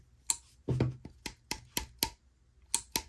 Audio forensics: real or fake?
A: real